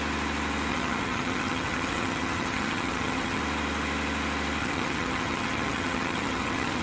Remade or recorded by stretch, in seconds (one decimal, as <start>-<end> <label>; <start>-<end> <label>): 0.0-0.7 recorded; 0.7-3.4 remade; 3.4-4.6 recorded; 4.6-6.8 remade